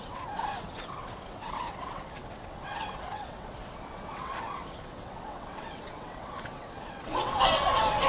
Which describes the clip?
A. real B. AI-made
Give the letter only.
B